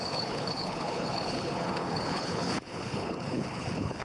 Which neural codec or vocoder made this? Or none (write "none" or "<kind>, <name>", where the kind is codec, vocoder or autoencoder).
codec, HILCodec